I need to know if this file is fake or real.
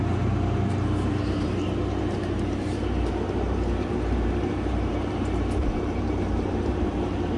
fake